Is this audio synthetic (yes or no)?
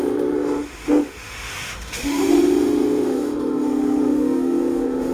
yes